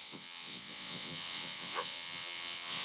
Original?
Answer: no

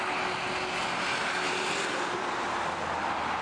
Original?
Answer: yes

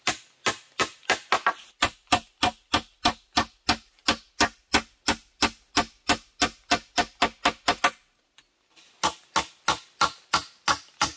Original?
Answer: yes